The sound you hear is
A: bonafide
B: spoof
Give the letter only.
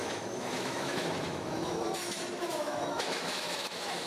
B